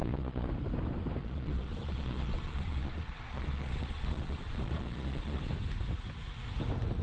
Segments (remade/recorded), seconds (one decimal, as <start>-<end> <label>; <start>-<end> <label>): 0.0-0.5 remade; 0.5-1.2 recorded; 1.2-5.4 remade; 5.4-7.0 recorded